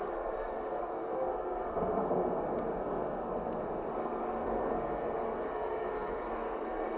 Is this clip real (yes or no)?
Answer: no